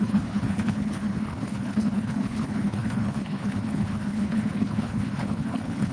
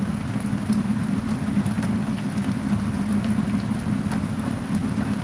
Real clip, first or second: second